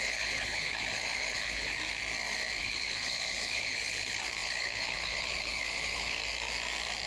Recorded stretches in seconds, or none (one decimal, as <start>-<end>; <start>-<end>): 1.8-2.6; 6.2-7.1